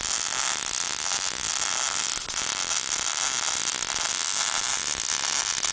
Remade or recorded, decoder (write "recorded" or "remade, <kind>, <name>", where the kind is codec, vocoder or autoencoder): recorded